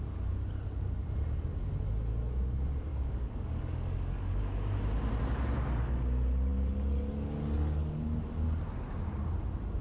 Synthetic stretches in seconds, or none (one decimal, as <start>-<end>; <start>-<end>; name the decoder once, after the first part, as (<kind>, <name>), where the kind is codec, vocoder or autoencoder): 2.9-4.4 (codec, DAC)